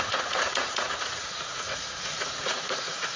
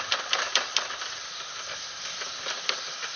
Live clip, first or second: second